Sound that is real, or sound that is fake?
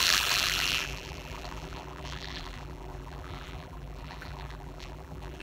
fake